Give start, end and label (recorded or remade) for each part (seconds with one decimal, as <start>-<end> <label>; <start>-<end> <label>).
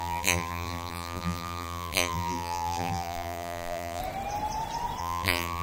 0.0-4.0 remade; 4.0-5.0 recorded; 5.0-5.6 remade